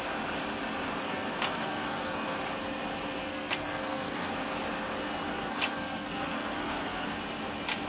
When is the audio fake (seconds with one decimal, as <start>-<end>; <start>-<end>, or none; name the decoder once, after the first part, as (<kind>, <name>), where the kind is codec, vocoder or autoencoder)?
1.0-2.4 (codec, SNAC); 3.3-4.3; 5.3-7.2